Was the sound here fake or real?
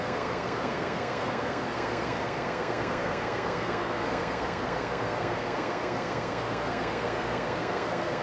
fake